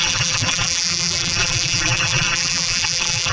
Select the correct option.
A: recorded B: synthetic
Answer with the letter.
B